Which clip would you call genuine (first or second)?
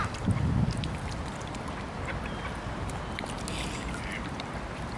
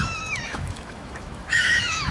first